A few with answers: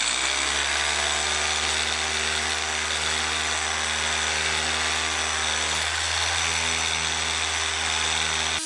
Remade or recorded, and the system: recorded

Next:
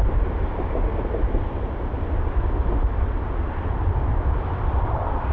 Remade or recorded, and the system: remade, vocoder, BigVGAN v2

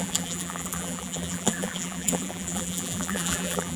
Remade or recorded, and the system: remade, vocoder, BigVGAN v2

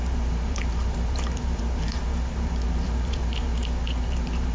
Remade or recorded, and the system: remade, vocoder, BigVGAN v2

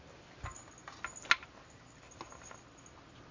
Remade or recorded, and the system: recorded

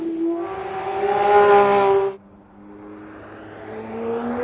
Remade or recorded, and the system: recorded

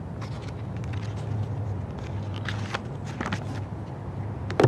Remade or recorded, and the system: recorded